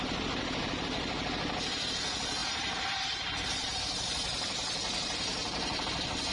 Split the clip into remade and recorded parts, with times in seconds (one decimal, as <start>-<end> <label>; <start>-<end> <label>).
0.0-2.4 recorded; 2.4-3.8 remade; 3.8-6.3 recorded